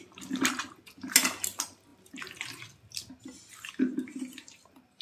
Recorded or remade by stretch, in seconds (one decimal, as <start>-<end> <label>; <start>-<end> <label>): 0.0-5.0 recorded